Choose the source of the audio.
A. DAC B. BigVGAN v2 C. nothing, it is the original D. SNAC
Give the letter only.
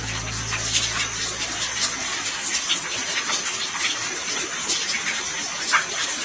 C